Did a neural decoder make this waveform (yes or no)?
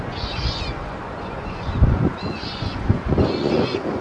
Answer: yes